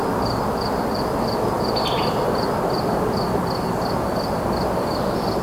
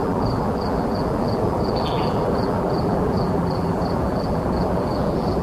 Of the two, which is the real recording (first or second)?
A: first